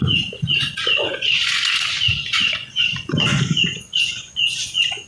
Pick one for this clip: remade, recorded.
remade